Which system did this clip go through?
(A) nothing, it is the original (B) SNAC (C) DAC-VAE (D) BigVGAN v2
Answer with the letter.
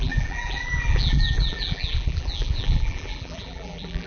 D